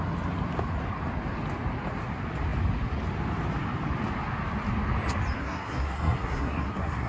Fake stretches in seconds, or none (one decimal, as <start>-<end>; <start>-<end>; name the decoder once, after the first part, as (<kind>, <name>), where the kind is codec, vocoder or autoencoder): 5.4-7.1 (codec, SNAC)